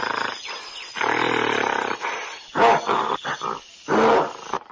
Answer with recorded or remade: recorded